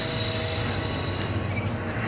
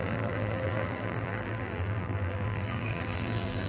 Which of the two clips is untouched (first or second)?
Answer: first